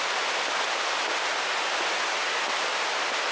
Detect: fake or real real